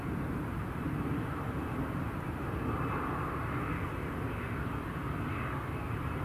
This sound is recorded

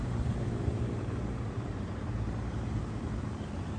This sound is remade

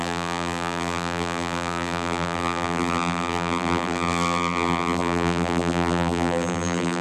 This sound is remade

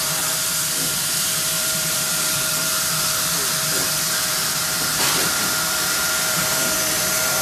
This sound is remade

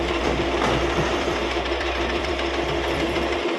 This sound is remade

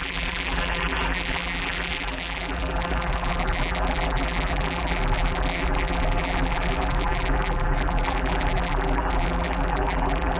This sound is remade